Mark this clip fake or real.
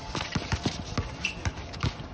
real